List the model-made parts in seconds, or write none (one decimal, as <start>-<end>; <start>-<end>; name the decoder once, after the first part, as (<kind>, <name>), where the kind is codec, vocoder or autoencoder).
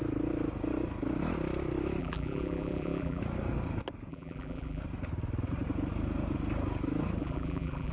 2.0-3.2 (vocoder, BigVGAN v2); 4.1-4.8; 7.2-7.9